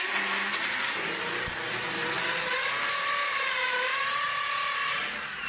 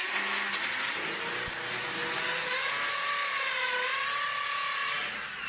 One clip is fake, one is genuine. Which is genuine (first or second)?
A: second